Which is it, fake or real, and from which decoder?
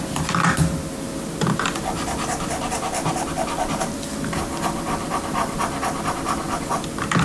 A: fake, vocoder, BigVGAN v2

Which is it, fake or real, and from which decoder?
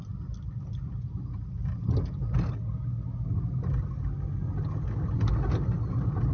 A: real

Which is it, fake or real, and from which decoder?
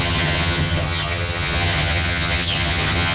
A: fake, vocoder, HiFi-GAN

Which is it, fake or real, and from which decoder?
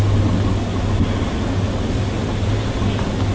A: real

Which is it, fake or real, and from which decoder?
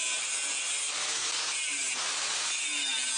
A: real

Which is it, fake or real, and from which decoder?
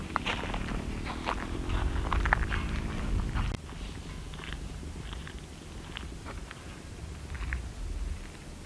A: real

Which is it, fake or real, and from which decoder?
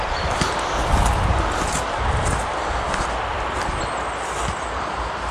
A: real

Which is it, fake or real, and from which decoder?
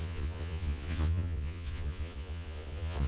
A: fake, vocoder, Vocos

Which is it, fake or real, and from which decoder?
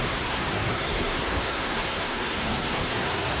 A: fake, codec, SNAC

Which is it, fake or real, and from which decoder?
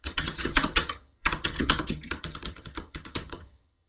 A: fake, vocoder, HiFi-GAN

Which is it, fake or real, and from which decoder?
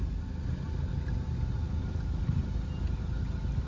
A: real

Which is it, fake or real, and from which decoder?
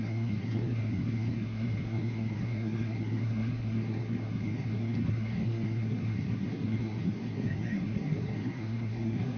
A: fake, codec, SNAC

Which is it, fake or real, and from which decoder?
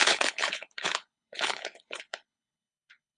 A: fake, codec, HILCodec